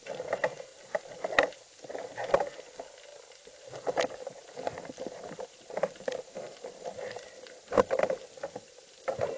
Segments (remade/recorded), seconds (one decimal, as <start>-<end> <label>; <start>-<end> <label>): 0.0-9.4 recorded